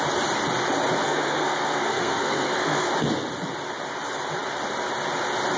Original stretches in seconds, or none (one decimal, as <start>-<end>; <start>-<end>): 0.0-1.0; 2.9-5.6